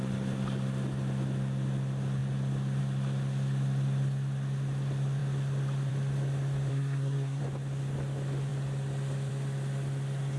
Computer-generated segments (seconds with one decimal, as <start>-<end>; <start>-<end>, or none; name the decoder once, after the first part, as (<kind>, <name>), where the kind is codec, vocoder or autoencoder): 6.7-7.4 (codec, SNAC)